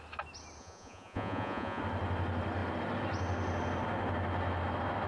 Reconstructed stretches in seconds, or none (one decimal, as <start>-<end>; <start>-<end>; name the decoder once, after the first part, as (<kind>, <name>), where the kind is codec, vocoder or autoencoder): 0.6-1.8 (vocoder, Vocos)